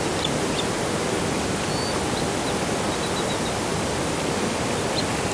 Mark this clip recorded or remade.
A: recorded